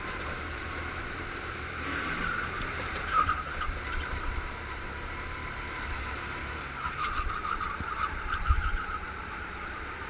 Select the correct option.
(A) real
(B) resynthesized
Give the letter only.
B